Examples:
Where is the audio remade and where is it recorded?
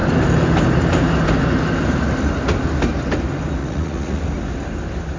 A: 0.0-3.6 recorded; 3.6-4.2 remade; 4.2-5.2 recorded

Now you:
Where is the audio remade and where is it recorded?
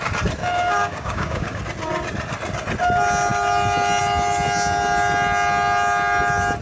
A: 0.0-0.4 recorded; 0.4-1.6 remade; 1.6-6.6 recorded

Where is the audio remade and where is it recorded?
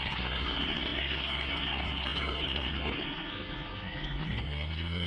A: 0.0-5.1 remade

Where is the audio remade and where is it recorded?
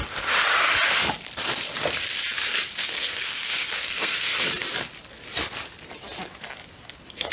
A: 0.0-2.8 recorded; 2.8-4.3 remade; 4.3-7.3 recorded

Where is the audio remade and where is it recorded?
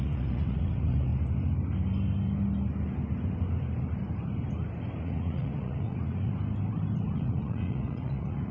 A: 0.0-1.1 remade; 1.1-5.0 recorded; 5.0-6.3 remade; 6.3-7.1 recorded; 7.1-8.5 remade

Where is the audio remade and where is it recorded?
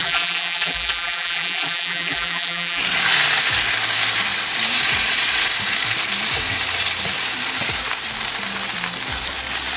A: 0.0-2.8 remade; 2.8-9.8 recorded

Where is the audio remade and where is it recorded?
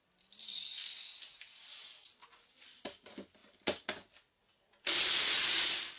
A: 0.0-6.0 recorded